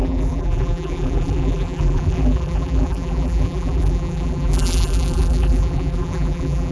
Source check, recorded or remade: remade